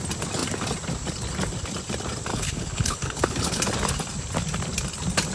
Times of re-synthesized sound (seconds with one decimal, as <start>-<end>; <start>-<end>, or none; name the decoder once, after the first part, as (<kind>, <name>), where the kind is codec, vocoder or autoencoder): 2.3-3.6 (codec, HILCodec)